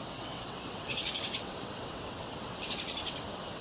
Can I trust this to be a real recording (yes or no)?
no